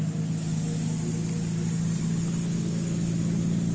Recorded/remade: recorded